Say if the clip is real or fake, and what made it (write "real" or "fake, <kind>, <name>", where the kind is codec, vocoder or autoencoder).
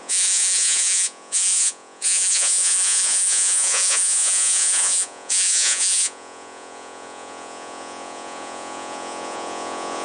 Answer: fake, vocoder, Vocos